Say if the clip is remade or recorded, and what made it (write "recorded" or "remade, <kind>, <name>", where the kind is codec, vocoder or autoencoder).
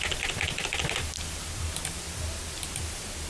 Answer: recorded